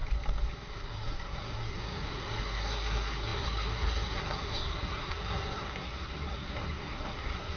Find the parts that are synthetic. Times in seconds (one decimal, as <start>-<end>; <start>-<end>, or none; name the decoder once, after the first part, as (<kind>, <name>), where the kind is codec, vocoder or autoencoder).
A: 0.7-7.6 (codec, SNAC)